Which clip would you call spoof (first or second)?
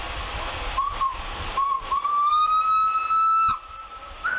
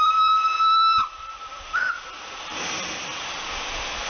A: second